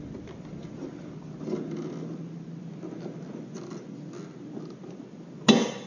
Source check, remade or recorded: recorded